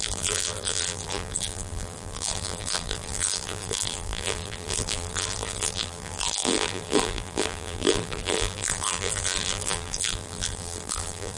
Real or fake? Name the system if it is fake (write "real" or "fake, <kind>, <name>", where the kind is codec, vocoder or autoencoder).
fake, vocoder, BigVGAN v2